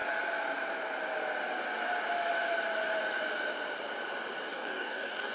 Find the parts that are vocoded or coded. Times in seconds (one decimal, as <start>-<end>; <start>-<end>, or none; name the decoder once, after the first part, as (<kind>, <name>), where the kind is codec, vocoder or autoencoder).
4.5-5.3 (codec, DAC)